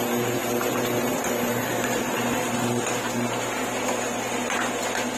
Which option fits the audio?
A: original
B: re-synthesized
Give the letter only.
A